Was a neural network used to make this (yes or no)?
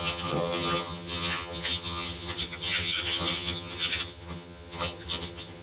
yes